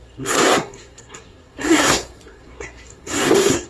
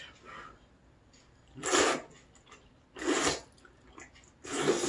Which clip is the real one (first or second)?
second